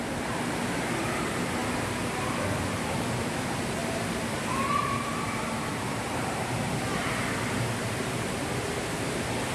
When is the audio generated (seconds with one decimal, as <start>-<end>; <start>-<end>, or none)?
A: 0.0-1.6; 2.7-9.5

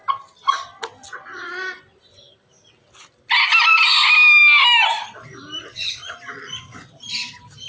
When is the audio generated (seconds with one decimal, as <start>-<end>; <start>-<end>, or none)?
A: none